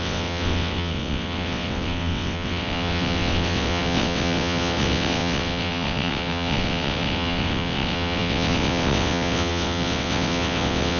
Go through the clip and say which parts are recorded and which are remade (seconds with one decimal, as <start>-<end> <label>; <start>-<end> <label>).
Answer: 0.0-11.0 remade